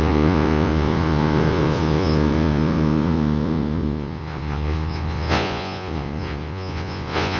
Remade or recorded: remade